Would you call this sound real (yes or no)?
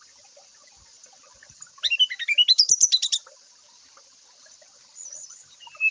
yes